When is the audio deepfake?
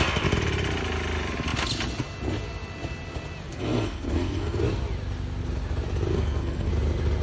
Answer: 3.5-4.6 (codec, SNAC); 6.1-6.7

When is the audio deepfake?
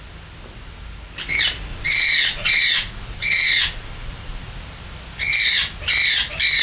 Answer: 1.7-4.5 (vocoder, Vocos)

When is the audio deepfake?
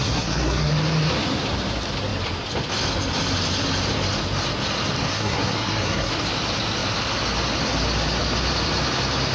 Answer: 0.0-0.7 (codec, SNAC); 5.1-6.1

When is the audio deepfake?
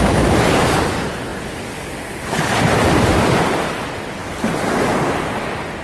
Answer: none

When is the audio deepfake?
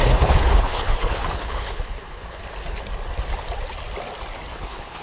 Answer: 0.0-2.4 (codec, HILCodec); 4.5-5.0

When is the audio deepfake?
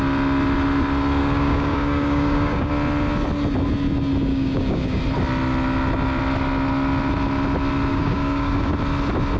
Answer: 1.2-2.7 (codec, DAC); 4.3-5.0; 7.9-8.7